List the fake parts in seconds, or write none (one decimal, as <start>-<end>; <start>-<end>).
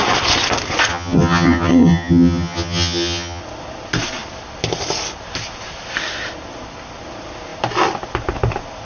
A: 0.9-3.4